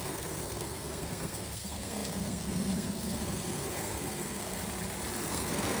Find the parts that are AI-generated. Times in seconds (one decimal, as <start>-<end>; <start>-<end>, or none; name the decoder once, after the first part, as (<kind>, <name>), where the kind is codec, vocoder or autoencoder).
0.0-4.6 (codec, SNAC); 5.3-5.8